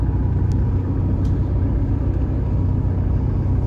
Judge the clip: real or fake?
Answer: real